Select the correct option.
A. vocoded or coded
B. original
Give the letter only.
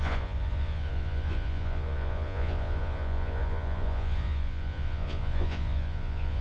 A